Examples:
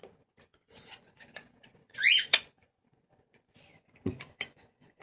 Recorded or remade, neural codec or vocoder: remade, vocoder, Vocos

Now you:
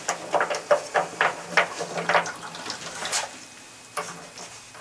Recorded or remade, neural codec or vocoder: recorded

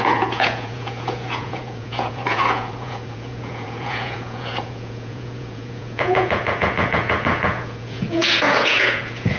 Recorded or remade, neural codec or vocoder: remade, vocoder, Vocos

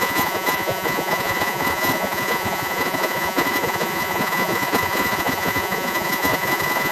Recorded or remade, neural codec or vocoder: remade, vocoder, Vocos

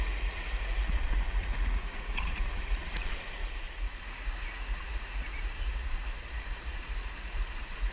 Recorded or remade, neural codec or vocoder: remade, vocoder, Vocos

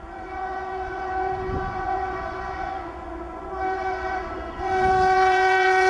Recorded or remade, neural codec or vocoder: remade, vocoder, Vocos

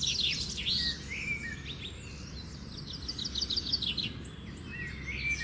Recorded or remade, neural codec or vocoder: recorded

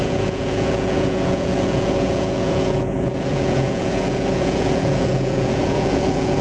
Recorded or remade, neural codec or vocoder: remade, vocoder, Vocos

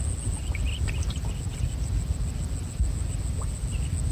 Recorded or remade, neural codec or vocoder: recorded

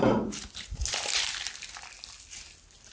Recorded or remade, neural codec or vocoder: recorded